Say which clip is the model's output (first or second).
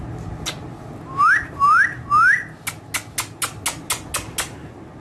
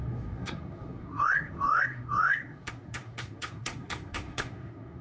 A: second